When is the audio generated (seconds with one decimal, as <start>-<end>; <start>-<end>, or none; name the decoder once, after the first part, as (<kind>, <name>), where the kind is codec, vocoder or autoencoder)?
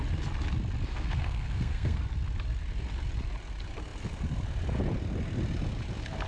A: 0.9-2.0 (codec, SNAC)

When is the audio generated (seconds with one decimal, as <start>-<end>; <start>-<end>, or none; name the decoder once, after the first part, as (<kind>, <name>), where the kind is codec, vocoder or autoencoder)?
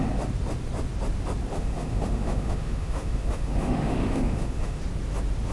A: 1.5-4.8 (autoencoder, DAC-VAE)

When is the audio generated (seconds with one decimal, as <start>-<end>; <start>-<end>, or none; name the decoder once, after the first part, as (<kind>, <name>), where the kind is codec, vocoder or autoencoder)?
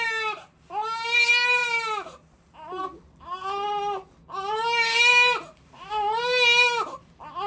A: none